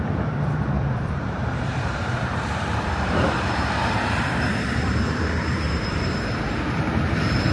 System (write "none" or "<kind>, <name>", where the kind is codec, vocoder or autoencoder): vocoder, BigVGAN v2